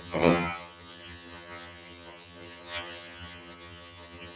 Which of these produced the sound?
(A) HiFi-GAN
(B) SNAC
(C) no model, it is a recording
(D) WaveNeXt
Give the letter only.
A